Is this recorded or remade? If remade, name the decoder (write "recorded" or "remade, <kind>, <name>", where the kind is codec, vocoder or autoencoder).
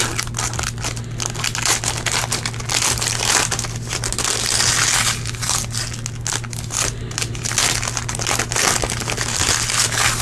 recorded